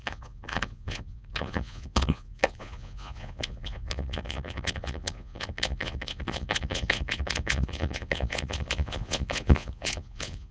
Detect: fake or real fake